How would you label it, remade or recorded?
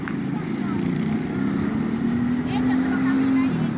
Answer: recorded